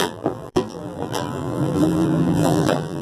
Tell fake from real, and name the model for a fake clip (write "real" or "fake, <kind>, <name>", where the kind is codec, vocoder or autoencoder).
fake, vocoder, BigVGAN v2